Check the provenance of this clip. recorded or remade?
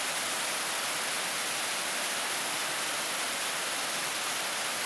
recorded